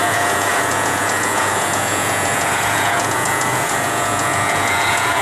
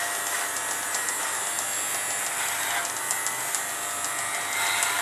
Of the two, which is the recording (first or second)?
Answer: second